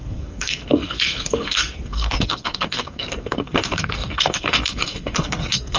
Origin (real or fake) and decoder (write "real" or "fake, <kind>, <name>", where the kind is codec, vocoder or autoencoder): fake, codec, SNAC